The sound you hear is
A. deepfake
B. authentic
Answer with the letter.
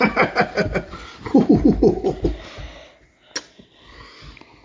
B